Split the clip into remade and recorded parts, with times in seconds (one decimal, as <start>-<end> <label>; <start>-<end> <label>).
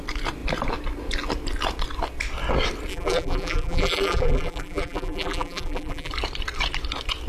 0.0-2.9 recorded; 2.9-6.1 remade; 6.1-7.3 recorded